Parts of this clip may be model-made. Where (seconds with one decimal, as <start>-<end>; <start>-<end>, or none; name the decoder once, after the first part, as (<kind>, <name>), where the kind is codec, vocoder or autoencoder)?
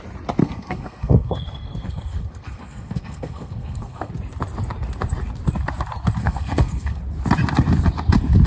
0.4-4.1 (codec, SNAC); 6.2-7.0